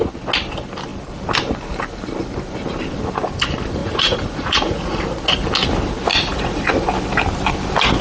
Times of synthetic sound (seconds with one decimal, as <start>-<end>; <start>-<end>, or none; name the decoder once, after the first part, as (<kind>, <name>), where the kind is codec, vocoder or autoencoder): 3.8-5.0 (vocoder, Vocos); 6.1-6.7